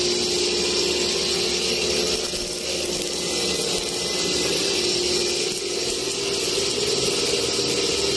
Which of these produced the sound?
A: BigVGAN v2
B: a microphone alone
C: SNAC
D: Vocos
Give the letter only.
B